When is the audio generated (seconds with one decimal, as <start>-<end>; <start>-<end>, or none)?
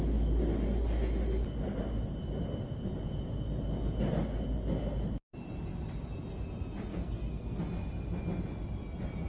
6.9-7.6